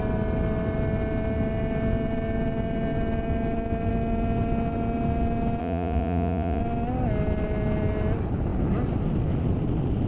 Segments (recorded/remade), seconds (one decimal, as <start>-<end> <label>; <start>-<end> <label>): 0.0-5.6 recorded; 5.6-6.6 remade; 6.6-10.1 recorded